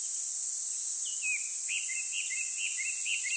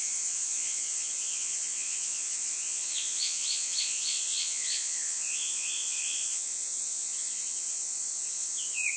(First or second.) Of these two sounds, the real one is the first